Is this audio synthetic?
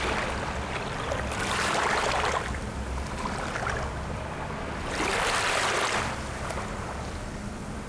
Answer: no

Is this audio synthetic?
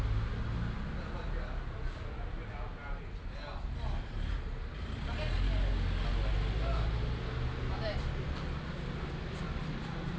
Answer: no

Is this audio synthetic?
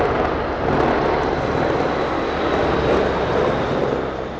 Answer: no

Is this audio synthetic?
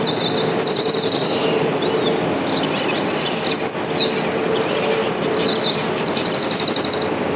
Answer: no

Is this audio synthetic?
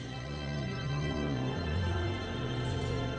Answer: yes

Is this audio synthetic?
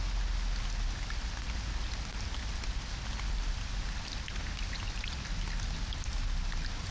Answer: no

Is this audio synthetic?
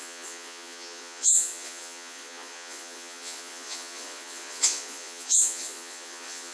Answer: yes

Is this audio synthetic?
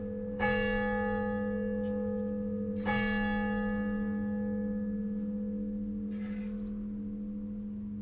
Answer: no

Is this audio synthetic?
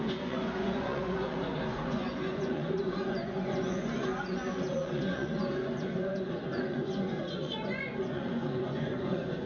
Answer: yes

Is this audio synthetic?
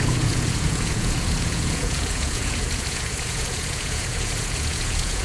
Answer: yes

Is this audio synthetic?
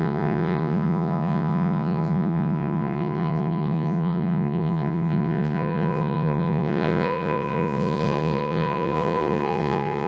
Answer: yes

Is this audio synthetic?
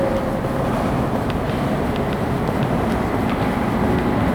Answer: no